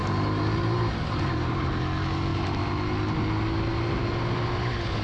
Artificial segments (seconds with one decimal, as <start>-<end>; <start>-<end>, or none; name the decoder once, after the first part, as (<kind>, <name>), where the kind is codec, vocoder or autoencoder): 0.0-1.7 (vocoder, BigVGAN v2)